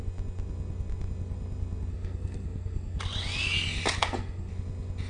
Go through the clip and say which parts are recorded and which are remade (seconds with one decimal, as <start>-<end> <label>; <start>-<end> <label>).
0.0-1.9 recorded; 1.9-3.0 remade; 3.0-4.0 recorded; 4.0-4.5 remade; 4.5-5.1 recorded